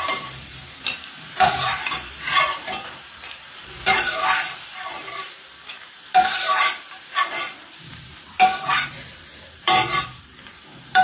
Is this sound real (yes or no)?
no